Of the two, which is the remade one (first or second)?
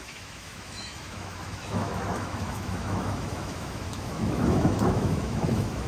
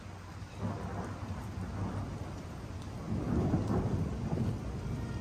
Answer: first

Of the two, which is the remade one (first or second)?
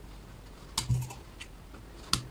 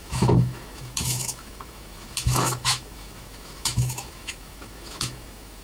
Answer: second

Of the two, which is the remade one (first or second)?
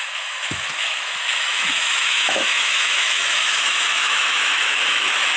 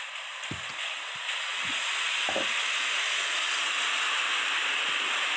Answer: first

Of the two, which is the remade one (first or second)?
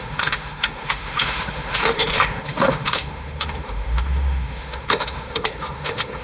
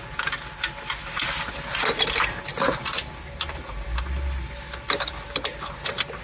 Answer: first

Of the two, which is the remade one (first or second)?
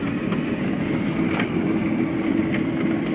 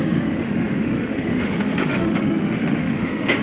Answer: second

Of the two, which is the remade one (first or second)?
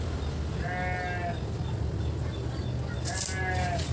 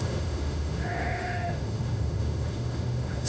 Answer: second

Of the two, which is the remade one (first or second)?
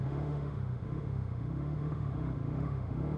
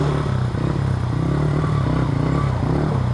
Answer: first